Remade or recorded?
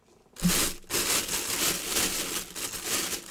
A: recorded